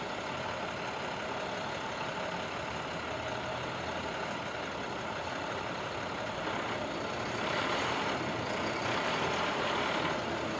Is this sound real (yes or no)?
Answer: yes